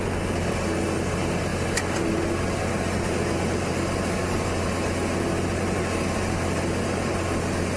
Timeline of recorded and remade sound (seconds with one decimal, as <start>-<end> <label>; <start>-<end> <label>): 0.0-7.8 recorded